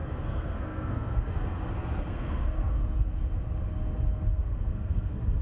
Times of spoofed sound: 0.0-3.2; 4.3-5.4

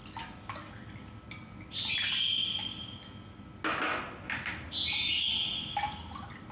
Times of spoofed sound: none

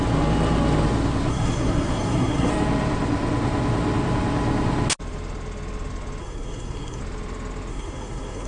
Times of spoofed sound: 1.3-2.5; 6.2-7.0; 7.7-8.5

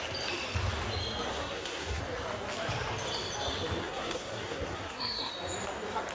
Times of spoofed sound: 1.3-2.0; 3.8-5.3

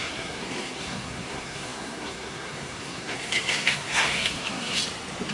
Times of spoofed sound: 0.0-4.8

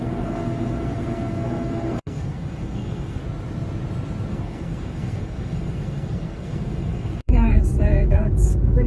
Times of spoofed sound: 0.0-3.2; 4.3-8.9

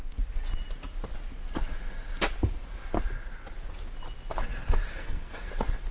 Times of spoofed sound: 4.9-5.5